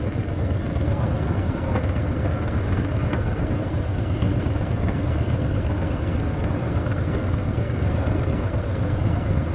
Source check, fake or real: fake